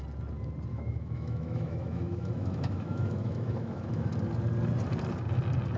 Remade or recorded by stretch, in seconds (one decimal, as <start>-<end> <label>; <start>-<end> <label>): 0.0-0.7 recorded; 0.7-4.1 remade; 4.1-5.8 recorded